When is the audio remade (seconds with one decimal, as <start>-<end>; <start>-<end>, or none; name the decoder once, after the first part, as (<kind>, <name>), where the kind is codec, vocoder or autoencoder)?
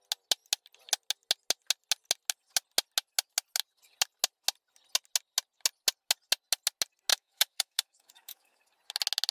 7.1-8.6 (autoencoder, DAC-VAE)